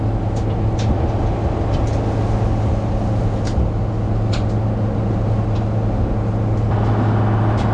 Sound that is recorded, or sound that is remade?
recorded